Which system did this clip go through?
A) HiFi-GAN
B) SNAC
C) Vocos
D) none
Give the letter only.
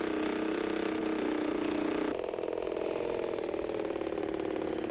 D